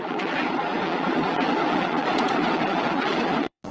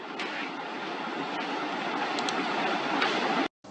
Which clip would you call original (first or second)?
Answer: second